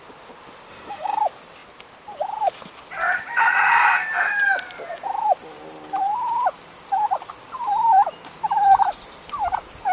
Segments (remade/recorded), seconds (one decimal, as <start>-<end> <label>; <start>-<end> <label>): 0.0-0.7 recorded; 0.7-1.2 remade; 1.2-9.9 recorded